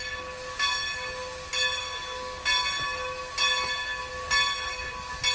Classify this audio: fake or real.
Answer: real